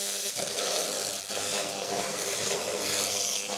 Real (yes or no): no